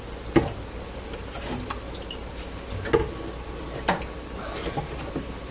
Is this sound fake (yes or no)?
no